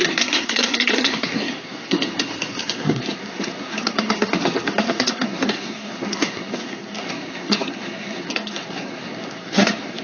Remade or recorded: remade